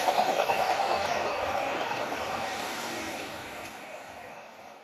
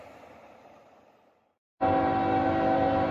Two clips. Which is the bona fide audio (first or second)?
second